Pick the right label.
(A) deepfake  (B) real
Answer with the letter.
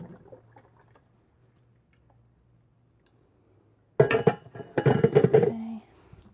B